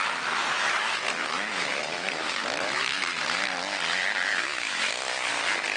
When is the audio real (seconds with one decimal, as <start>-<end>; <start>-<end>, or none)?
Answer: 0.0-0.4; 3.2-4.3; 4.9-5.8